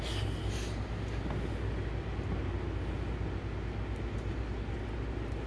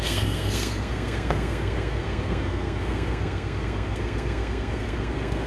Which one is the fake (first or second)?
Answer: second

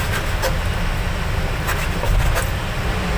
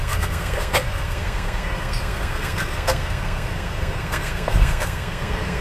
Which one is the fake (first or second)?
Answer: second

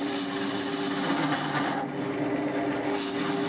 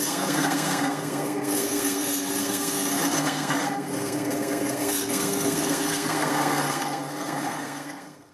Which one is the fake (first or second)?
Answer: second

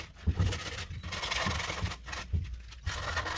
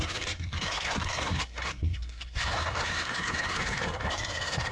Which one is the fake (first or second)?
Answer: second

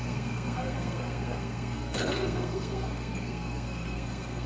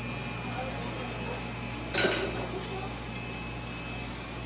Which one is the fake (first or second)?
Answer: first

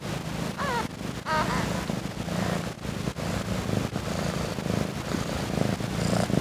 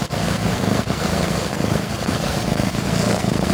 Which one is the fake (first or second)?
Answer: second